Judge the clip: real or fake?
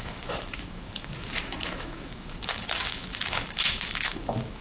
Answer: fake